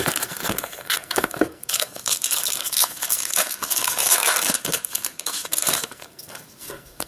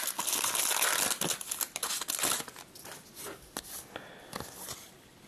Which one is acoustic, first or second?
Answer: second